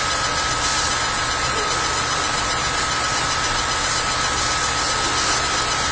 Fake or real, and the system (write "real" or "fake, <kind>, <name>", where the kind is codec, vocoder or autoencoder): real